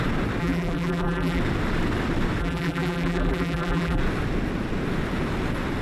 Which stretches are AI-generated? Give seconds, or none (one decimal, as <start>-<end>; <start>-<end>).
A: 0.4-1.4; 2.4-4.0